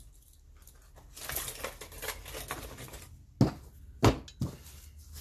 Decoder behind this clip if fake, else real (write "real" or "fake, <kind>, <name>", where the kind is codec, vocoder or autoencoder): real